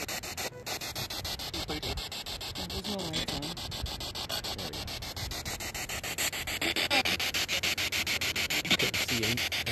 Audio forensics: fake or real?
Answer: real